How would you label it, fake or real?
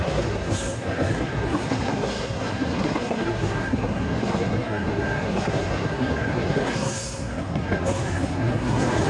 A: fake